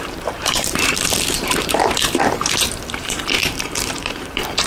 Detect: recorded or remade remade